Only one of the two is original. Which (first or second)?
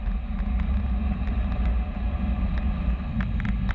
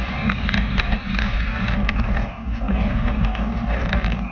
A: first